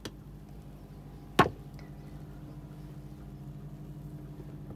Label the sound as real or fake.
real